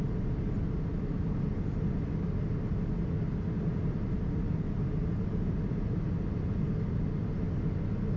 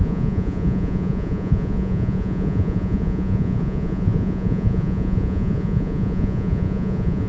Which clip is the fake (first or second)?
second